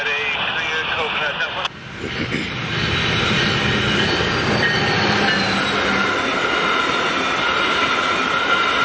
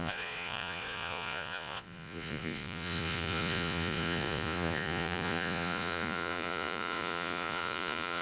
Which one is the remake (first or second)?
second